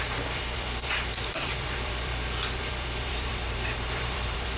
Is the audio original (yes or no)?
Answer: no